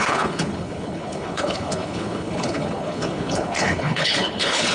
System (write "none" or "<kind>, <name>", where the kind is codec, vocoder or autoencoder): codec, HILCodec